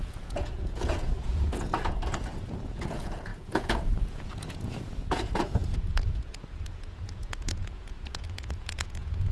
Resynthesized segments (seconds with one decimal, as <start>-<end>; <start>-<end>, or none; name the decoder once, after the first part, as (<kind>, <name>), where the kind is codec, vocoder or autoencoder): 0.0-9.3 (vocoder, Vocos)

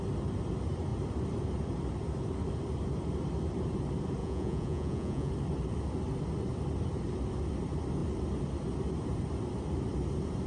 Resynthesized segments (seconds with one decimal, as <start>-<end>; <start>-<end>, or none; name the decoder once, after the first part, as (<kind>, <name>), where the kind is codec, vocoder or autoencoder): 4.2-5.3 (vocoder, Vocos)

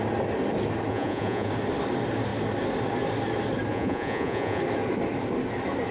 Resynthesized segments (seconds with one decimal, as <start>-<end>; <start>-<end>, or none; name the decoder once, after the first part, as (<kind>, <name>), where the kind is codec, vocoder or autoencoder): 0.9-1.5 (vocoder, Vocos); 3.7-4.6

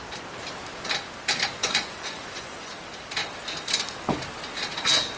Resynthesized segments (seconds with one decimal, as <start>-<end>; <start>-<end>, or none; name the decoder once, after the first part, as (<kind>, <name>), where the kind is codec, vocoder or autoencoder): 1.6-2.7 (vocoder, Vocos)

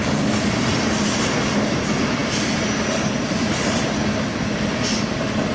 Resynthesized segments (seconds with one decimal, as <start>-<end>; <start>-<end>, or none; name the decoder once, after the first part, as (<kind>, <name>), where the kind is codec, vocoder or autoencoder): none

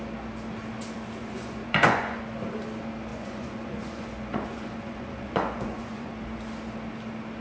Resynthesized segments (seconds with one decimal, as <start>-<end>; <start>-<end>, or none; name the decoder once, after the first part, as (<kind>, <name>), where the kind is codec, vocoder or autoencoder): 1.2-2.2 (vocoder, Vocos); 3.1-6.1

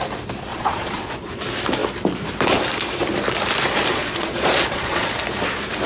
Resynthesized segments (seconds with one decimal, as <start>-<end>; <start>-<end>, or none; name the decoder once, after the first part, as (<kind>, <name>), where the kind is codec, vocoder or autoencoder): 0.5-1.4 (vocoder, Vocos); 3.9-5.1

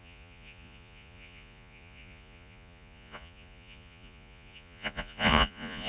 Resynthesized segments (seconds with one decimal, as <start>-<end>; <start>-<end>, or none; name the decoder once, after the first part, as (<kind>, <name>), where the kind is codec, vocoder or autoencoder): 0.0-5.9 (vocoder, Vocos)